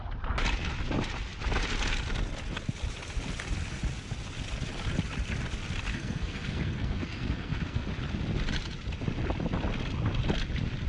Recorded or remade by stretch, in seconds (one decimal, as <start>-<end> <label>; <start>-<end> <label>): 0.0-5.9 recorded; 5.9-7.9 remade; 7.9-10.9 recorded

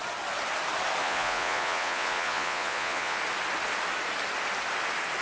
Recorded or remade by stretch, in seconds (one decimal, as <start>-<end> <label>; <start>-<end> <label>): 0.0-1.0 recorded; 1.0-3.2 remade; 3.2-5.2 recorded

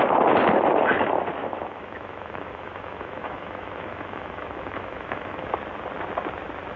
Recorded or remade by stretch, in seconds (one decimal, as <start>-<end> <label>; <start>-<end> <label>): 0.0-1.4 recorded; 1.4-5.5 remade; 5.5-6.8 recorded

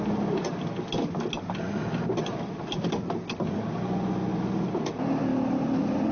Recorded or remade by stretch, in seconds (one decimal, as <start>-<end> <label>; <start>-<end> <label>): 0.0-6.1 recorded

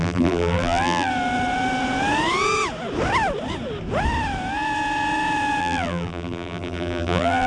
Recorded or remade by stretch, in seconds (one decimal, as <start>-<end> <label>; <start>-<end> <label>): 0.0-1.1 remade; 1.1-5.6 recorded; 5.6-7.5 remade

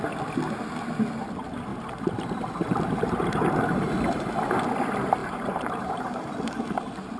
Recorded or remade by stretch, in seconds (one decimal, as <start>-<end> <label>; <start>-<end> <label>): 0.0-1.7 recorded; 1.7-4.5 remade; 4.5-5.2 recorded; 5.2-6.5 remade; 6.5-7.2 recorded

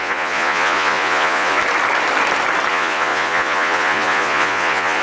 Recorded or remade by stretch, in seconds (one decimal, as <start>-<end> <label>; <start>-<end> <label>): 0.0-1.6 remade; 1.6-2.7 recorded; 2.7-5.0 remade

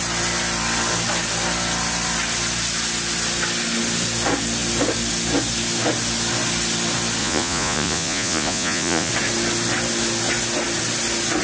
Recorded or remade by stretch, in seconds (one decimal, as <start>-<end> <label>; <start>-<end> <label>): 0.0-7.2 recorded; 7.2-9.1 remade; 9.1-11.4 recorded